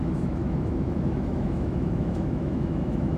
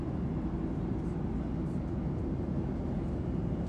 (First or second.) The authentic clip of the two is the second